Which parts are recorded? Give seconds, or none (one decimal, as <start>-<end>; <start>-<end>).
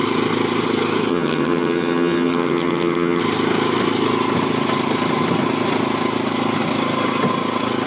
0.0-1.1; 3.2-7.9